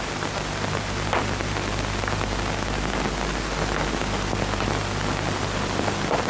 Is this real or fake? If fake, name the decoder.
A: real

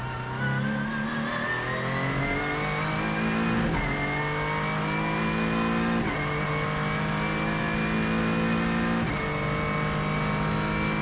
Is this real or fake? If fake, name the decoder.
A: real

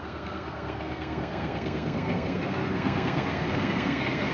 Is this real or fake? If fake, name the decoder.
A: fake, codec, SNAC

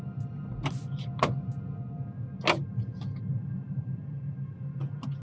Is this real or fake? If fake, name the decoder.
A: real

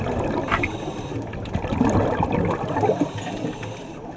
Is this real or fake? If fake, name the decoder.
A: real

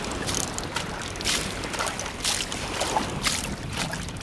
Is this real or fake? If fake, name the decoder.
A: real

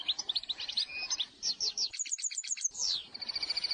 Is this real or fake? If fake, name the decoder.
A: real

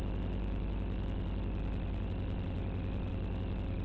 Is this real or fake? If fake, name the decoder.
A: real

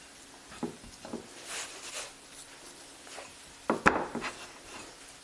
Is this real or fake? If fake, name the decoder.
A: real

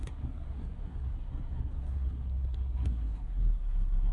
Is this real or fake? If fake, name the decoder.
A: fake, codec, SNAC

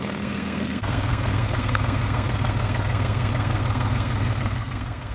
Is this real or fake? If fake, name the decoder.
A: fake, codec, SNAC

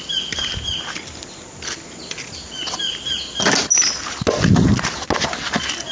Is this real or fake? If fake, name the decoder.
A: real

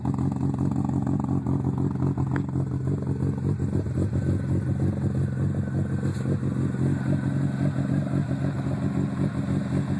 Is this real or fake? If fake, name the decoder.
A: real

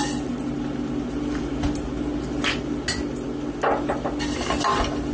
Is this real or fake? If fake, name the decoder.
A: real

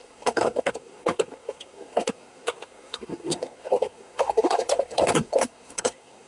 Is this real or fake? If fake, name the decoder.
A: fake, codec, SNAC